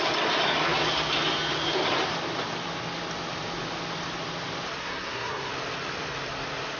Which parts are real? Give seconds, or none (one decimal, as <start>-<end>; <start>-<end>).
0.0-4.8; 5.5-6.8